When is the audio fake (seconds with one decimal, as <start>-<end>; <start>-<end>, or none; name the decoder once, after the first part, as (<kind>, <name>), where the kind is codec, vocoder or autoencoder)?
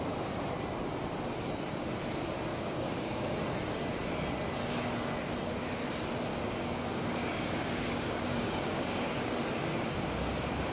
2.5-3.3 (codec, DAC); 6.3-9.3